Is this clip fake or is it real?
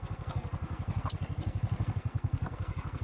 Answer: fake